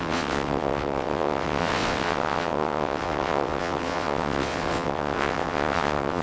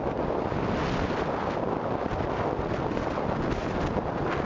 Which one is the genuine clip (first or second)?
second